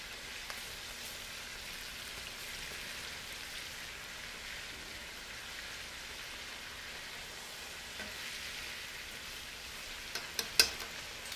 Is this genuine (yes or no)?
yes